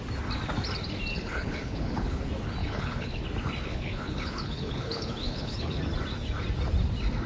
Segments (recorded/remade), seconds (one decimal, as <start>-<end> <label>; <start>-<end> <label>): 0.0-1.1 recorded; 1.1-2.2 remade; 2.2-2.6 recorded; 2.6-3.2 remade; 3.2-3.7 recorded; 3.7-5.8 remade; 5.8-7.3 recorded